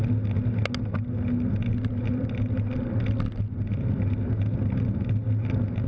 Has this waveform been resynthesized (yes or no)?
no